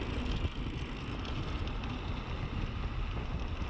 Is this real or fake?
real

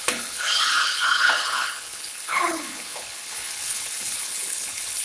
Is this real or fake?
fake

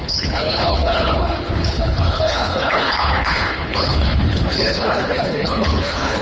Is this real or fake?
fake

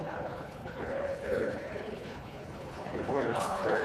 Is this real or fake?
fake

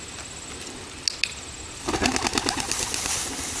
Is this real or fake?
real